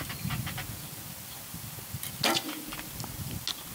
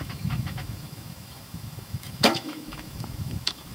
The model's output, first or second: second